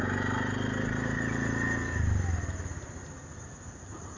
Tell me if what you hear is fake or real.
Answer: real